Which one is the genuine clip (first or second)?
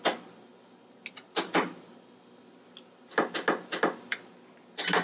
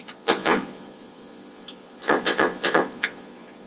first